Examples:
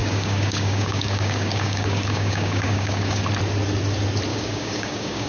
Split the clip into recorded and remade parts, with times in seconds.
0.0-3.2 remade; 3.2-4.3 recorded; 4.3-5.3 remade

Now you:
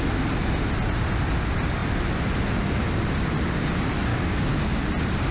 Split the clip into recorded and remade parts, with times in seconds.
0.0-4.1 recorded; 4.1-4.8 remade; 4.8-5.3 recorded

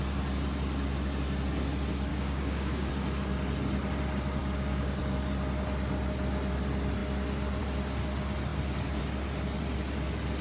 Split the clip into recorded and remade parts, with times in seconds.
0.0-2.1 recorded; 2.1-2.9 remade; 2.9-4.4 recorded; 4.4-5.0 remade; 5.0-10.4 recorded

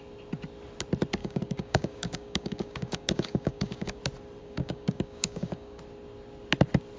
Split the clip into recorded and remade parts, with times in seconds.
0.0-1.2 recorded; 1.2-4.0 remade; 4.0-4.4 recorded; 4.4-5.8 remade; 5.8-7.0 recorded

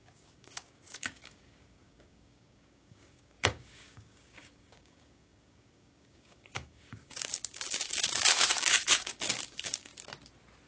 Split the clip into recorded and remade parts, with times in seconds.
0.0-9.9 remade; 9.9-10.7 recorded

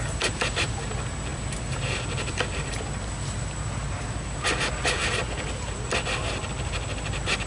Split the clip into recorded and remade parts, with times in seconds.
0.0-7.5 recorded

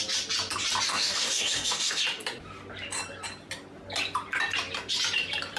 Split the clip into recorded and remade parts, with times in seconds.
0.0-0.9 recorded; 0.9-2.0 remade; 2.0-5.6 recorded